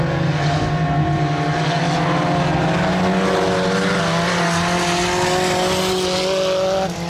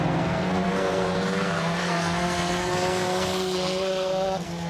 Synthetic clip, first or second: second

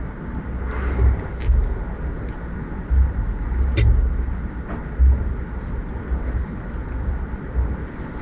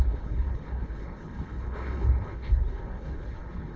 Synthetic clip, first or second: second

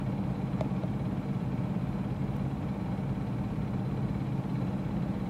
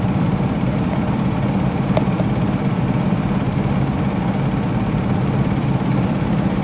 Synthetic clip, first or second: second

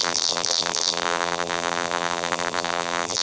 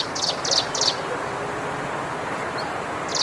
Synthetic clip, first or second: first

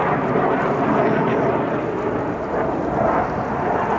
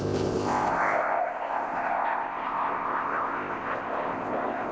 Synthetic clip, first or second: second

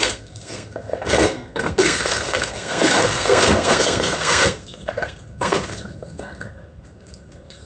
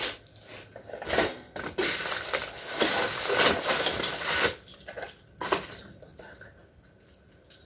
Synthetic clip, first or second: first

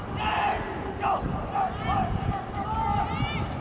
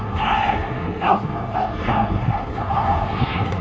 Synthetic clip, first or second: second